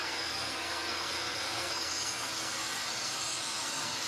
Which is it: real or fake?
fake